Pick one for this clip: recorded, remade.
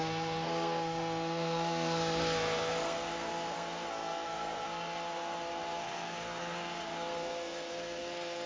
remade